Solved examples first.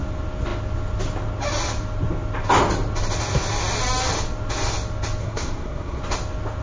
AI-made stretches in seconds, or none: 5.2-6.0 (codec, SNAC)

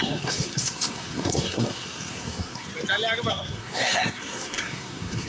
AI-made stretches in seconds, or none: 0.0-2.7 (codec, SNAC); 3.3-5.3

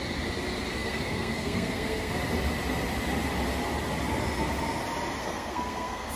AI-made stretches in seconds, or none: 0.7-2.1 (codec, SNAC); 5.2-6.2

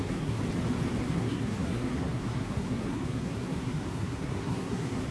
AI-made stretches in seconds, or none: 0.0-0.4 (codec, SNAC); 1.0-5.1

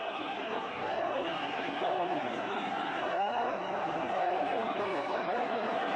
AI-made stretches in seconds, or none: 0.0-6.0 (codec, SNAC)

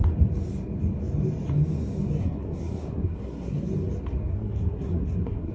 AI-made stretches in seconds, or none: 2.2-3.7 (codec, SNAC); 4.3-5.5

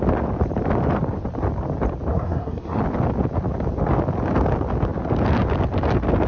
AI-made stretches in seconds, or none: 2.1-2.8 (codec, SNAC)